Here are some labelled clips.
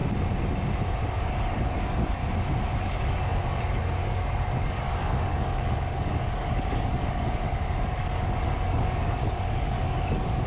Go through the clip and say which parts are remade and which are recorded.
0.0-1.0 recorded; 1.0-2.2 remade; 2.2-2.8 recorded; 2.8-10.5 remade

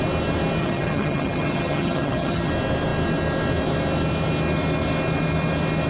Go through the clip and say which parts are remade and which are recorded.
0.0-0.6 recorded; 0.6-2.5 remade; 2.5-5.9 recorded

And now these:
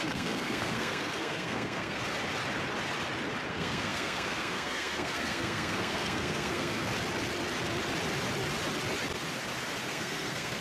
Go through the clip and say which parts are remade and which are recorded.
0.0-2.0 remade; 2.0-3.5 recorded; 3.5-6.9 remade; 6.9-9.9 recorded; 9.9-10.6 remade

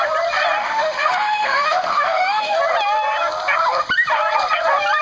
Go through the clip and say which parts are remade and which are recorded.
0.0-0.6 recorded; 0.6-2.6 remade; 2.6-5.0 recorded

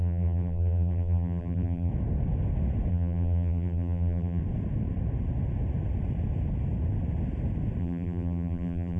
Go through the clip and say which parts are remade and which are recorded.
0.0-1.9 remade; 1.9-2.9 recorded; 2.9-4.4 remade; 4.4-7.8 recorded; 7.8-9.0 remade